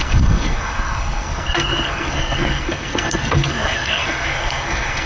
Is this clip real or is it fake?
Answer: fake